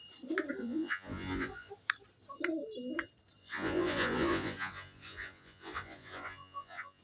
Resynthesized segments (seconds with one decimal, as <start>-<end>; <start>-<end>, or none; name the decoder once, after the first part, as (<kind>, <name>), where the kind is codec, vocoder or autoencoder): 0.6-1.7 (vocoder, Vocos); 3.4-7.0

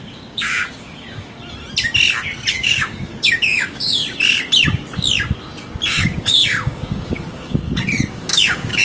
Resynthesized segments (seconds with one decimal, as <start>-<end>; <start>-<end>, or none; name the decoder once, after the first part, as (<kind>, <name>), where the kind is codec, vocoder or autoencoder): 0.0-1.4 (codec, DAC); 2.5-4.0; 5.9-7.6; 8.1-8.8

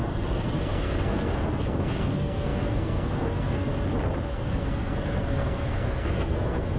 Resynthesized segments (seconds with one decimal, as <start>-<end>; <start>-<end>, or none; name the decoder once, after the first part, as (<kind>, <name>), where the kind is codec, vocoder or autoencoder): 0.0-3.7 (codec, SNAC); 4.3-6.8

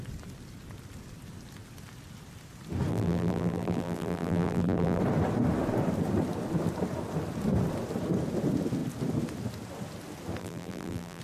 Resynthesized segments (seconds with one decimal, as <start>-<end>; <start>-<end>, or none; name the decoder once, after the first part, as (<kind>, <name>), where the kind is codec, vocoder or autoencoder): 2.9-5.0 (vocoder, BigVGAN v2); 10.4-11.2